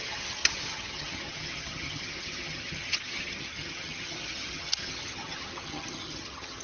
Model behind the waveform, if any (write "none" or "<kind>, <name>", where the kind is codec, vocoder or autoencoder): vocoder, HiFi-GAN